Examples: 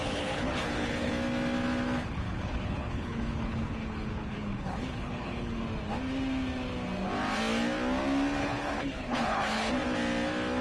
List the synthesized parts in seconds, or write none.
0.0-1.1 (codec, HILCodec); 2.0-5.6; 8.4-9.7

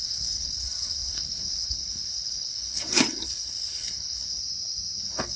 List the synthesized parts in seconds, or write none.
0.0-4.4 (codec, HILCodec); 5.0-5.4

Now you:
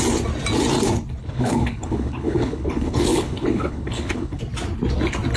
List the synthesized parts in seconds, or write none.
1.2-4.4 (codec, HILCodec)

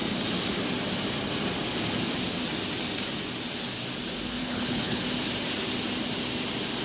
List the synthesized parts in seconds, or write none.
4.4-5.0 (codec, HILCodec)